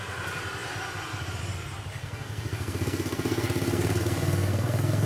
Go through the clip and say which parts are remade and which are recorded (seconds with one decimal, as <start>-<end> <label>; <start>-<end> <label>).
0.0-1.9 recorded; 1.9-5.1 remade